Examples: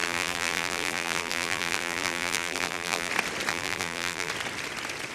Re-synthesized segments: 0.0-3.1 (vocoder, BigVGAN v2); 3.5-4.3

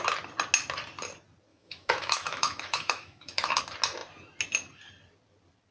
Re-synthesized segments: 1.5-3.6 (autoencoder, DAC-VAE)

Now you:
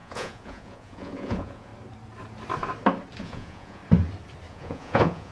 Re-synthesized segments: 0.0-1.7 (vocoder, Vocos); 3.2-3.8; 4.5-5.3

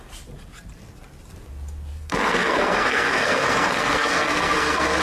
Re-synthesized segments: 1.9-5.0 (codec, SNAC)